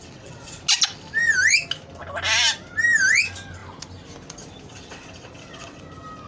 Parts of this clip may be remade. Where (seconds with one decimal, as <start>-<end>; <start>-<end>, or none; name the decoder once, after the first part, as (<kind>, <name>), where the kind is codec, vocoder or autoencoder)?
0.0-0.6 (vocoder, WaveNeXt); 4.7-5.8